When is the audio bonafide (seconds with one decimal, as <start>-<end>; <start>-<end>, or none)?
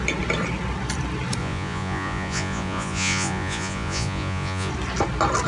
0.0-1.4; 4.7-5.5